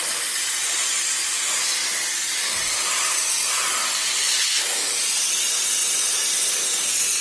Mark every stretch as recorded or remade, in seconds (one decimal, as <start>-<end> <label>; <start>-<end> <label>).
0.0-7.2 recorded